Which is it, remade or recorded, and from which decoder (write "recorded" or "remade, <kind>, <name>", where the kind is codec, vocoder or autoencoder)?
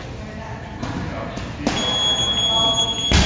recorded